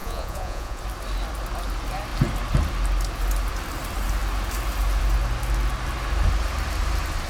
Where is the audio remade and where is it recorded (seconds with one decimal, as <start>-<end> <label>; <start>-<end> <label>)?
0.0-0.8 remade; 0.8-7.3 recorded